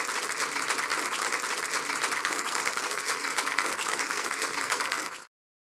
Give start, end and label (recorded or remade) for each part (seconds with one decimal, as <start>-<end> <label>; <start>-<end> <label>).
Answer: 0.0-2.2 recorded; 2.2-5.7 remade